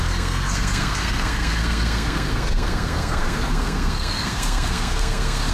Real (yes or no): no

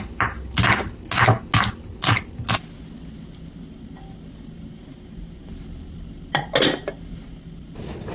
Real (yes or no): yes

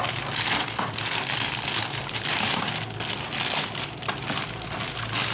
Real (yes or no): yes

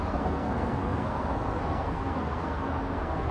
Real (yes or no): no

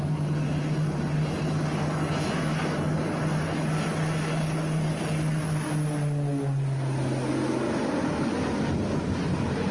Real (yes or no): yes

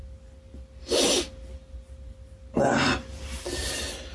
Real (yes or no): yes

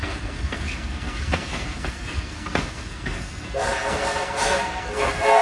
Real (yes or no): no